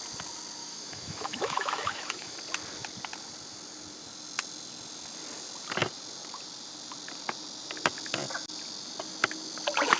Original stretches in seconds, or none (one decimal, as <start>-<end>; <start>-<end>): 0.0-0.6; 2.4-10.0